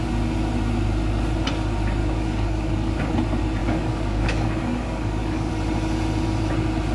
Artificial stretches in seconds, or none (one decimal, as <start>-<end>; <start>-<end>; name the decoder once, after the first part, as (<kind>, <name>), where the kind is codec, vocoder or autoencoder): 2.0-2.9 (codec, DAC); 3.6-5.5